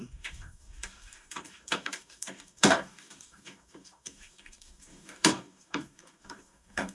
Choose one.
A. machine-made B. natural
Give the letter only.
A